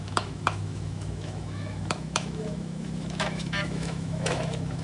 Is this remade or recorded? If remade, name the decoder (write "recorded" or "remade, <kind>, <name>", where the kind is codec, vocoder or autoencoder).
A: remade, autoencoder, DAC-VAE